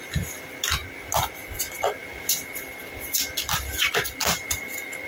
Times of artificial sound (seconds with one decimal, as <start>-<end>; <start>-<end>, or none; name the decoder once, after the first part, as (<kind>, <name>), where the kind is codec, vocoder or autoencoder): 0.0-0.8 (vocoder, BigVGAN v2); 1.4-2.0; 2.6-5.1